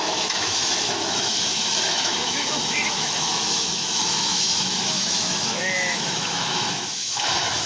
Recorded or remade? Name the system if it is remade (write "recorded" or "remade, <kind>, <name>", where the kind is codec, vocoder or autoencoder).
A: remade, autoencoder, DAC-VAE